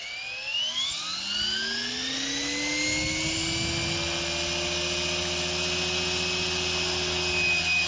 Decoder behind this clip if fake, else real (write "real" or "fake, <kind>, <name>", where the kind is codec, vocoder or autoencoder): real